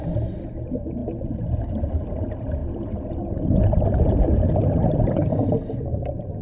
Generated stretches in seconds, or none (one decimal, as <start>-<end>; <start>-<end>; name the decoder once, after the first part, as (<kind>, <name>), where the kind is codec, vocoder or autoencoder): none